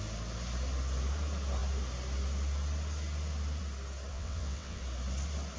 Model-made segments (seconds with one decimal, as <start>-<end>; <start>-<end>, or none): 4.1-4.8